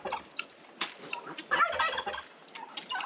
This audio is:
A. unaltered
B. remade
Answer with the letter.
A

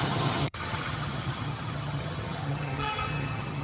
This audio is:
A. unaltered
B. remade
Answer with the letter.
B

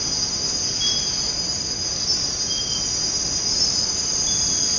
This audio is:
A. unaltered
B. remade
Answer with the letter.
A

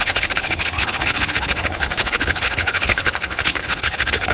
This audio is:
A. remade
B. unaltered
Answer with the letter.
A